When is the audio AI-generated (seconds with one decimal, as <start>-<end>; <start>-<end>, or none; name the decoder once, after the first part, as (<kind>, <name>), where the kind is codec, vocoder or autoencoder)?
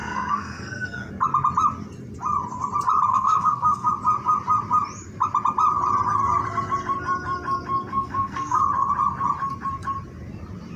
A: 0.0-1.1 (codec, SNAC); 3.1-3.9; 7.9-8.6